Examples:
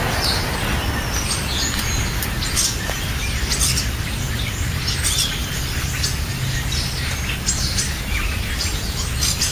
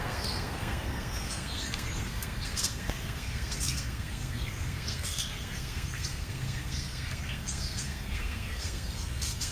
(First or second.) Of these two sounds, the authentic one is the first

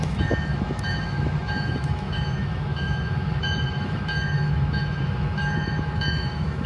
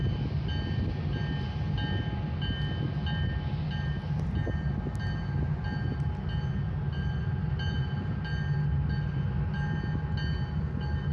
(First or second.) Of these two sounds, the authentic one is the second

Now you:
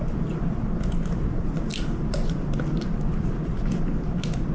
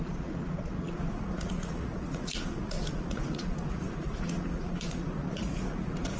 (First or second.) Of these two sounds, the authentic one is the first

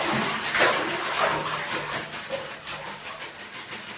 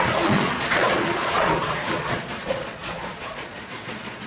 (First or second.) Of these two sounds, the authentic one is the first